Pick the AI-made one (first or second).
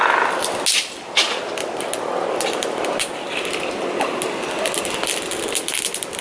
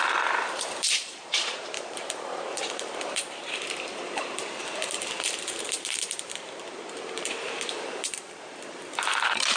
second